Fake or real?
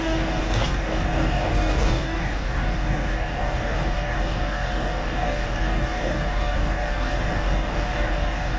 fake